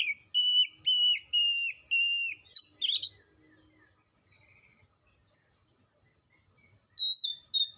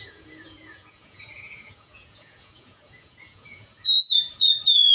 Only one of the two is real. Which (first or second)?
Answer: first